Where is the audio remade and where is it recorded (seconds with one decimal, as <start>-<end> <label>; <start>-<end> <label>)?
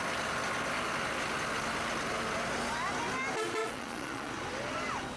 0.0-3.6 recorded; 3.6-4.3 remade; 4.3-5.2 recorded